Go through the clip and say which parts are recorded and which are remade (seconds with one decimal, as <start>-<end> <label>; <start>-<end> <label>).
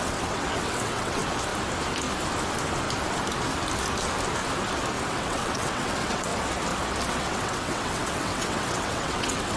0.0-1.2 remade; 1.2-5.1 recorded; 5.1-6.3 remade; 6.3-7.1 recorded; 7.1-9.6 remade